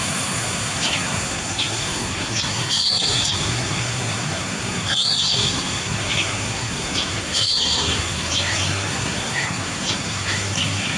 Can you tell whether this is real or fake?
fake